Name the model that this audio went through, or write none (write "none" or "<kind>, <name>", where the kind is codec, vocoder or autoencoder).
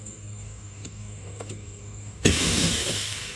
codec, DAC